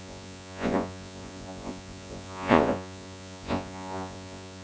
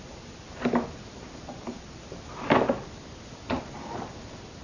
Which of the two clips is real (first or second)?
second